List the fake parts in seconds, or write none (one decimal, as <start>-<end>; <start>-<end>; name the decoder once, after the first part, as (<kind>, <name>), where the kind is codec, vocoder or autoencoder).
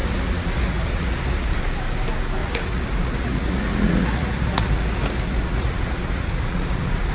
0.0-1.6 (vocoder, Vocos); 2.4-7.1